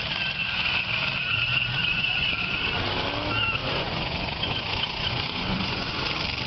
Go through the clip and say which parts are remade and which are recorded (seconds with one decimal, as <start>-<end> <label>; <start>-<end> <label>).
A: 0.0-1.8 recorded; 1.8-2.3 remade; 2.3-3.6 recorded; 3.6-6.0 remade; 6.0-6.5 recorded